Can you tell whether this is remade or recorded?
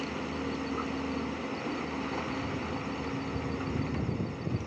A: recorded